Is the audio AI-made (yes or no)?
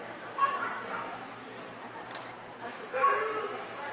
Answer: yes